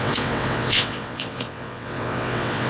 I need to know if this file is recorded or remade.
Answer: remade